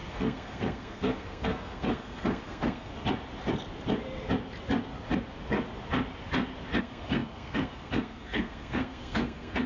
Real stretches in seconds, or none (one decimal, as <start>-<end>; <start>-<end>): 2.9-6.8